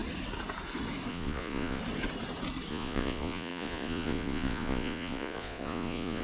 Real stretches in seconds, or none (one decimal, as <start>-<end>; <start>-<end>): 0.0-1.1; 1.8-2.7

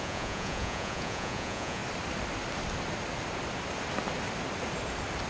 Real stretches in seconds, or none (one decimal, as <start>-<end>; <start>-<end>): 1.8-5.3

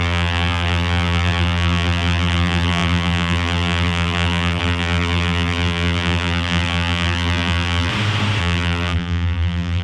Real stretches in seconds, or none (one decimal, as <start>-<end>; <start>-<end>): 7.9-8.4

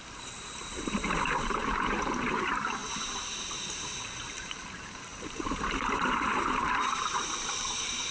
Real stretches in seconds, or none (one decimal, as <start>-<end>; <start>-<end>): none

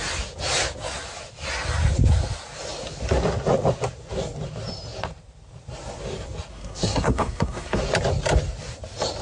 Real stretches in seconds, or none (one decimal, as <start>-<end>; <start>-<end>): 0.0-6.5; 7.8-9.2

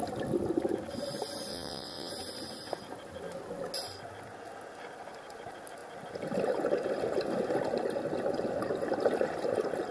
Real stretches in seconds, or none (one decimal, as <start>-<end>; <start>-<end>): 0.0-1.5; 2.1-9.9